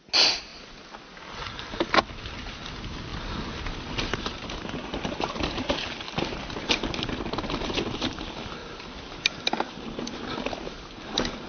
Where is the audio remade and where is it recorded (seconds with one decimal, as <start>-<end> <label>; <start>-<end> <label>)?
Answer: 0.0-8.6 recorded; 8.6-9.2 remade; 9.2-11.5 recorded